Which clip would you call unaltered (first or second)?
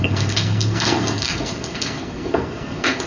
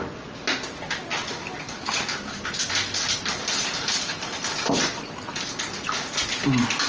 second